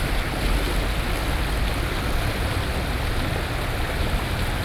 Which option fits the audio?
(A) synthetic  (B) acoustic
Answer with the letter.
B